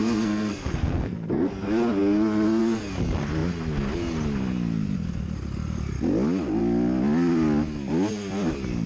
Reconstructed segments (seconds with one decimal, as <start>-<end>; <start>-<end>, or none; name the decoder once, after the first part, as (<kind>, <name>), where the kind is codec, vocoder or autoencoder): 0.0-1.5 (codec, SNAC)